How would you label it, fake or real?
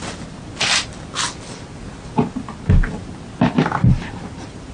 real